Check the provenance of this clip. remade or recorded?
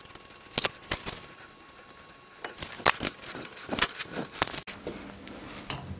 recorded